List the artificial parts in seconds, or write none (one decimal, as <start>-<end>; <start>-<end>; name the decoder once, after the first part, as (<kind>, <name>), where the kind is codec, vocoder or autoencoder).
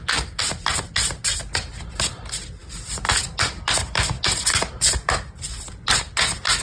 none